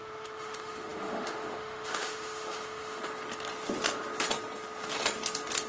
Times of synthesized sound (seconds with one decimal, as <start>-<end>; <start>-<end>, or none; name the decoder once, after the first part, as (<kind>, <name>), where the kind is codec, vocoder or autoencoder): 0.0-3.0 (autoencoder, DAC-VAE)